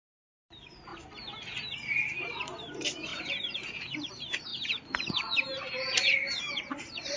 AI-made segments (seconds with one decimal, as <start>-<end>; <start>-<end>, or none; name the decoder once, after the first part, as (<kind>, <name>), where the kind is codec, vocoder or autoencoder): 0.0-0.9 (vocoder, BigVGAN v2); 1.6-4.5; 5.1-7.2